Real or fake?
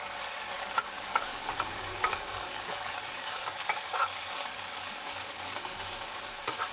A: fake